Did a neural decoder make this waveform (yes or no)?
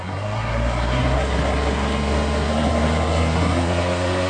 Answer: yes